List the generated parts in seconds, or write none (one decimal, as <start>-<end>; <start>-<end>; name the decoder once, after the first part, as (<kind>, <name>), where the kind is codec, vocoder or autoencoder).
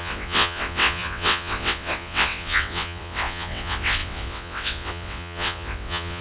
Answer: 0.0-6.2 (vocoder, WaveNeXt)